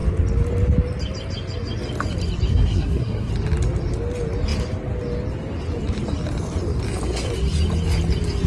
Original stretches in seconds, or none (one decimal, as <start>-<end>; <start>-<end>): 0.0-2.5; 3.3-8.5